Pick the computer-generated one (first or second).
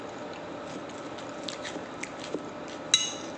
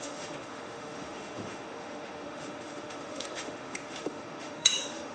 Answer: second